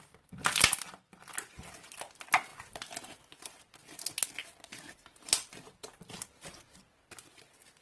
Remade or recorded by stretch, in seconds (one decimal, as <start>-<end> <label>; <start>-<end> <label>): 0.0-2.5 recorded; 2.5-3.8 remade; 3.8-4.4 recorded; 4.4-6.8 remade; 6.8-7.8 recorded